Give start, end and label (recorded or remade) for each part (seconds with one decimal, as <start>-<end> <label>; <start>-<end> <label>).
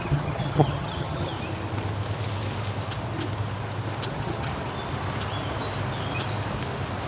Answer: 0.0-1.3 remade; 1.3-4.1 recorded; 4.1-4.5 remade; 4.5-7.1 recorded